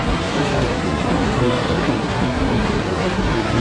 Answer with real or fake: fake